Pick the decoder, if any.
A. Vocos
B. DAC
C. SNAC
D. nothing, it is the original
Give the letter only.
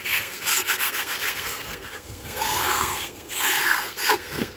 C